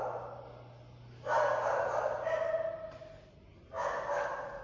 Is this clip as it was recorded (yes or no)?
yes